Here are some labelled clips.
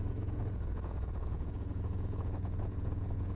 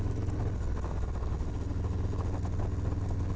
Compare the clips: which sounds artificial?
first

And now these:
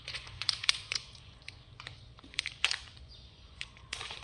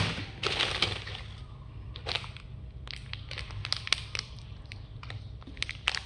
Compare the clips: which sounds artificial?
first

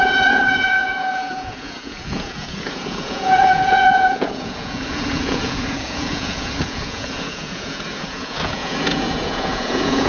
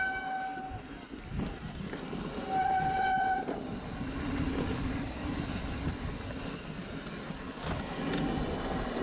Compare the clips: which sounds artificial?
first